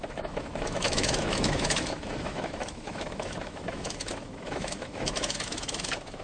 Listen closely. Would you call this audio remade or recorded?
remade